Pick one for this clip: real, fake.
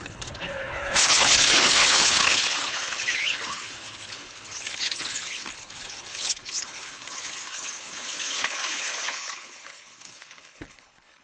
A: fake